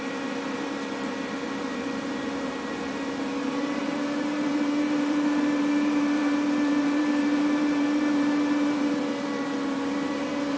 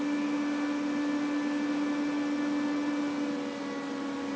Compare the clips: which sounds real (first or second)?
second